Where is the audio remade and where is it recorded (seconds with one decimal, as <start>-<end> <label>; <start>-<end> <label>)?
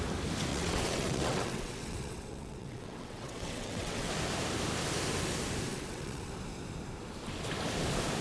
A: 0.0-0.5 recorded; 0.5-4.1 remade; 4.1-5.7 recorded; 5.7-6.3 remade; 6.3-8.2 recorded